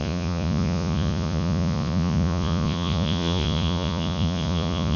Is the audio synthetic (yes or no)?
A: yes